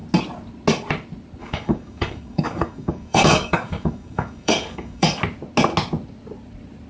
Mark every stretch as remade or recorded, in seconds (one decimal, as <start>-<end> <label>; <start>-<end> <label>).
0.0-1.4 recorded; 1.4-5.2 remade; 5.2-6.9 recorded